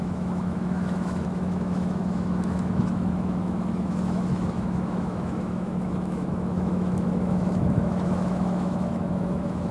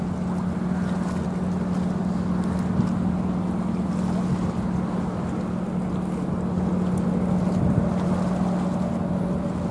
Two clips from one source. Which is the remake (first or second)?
first